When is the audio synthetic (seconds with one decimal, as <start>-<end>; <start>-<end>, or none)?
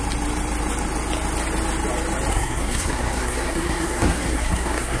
2.3-5.0